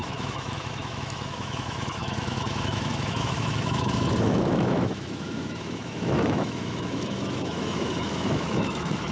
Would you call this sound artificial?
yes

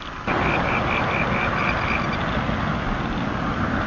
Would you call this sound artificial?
no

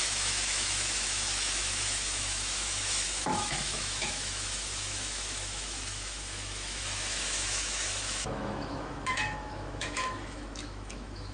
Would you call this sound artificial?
yes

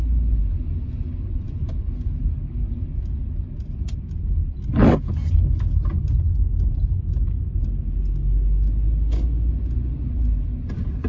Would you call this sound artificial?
no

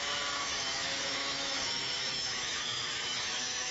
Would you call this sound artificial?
yes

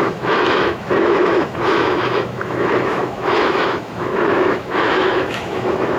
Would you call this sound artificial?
yes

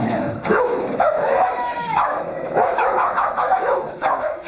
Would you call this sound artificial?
yes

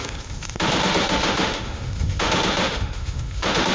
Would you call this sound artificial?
yes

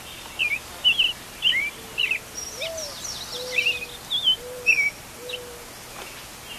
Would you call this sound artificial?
no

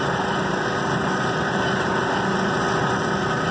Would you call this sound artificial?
no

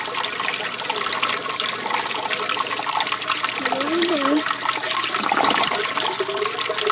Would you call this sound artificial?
no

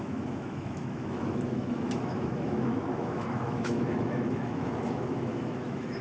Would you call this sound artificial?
yes